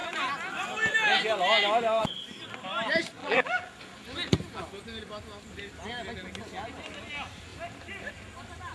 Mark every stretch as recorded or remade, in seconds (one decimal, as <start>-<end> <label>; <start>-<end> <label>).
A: 0.0-3.2 recorded; 3.2-3.7 remade; 3.7-8.7 recorded